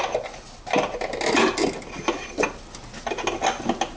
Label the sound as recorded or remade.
recorded